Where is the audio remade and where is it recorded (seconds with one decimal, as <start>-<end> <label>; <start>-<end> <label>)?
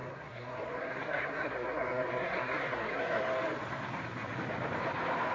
0.0-3.2 remade; 3.2-5.3 recorded